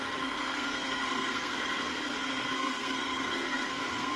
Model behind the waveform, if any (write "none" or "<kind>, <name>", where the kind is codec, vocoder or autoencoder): codec, SNAC